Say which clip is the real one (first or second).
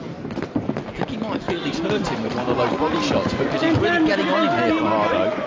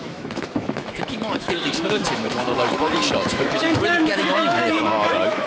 first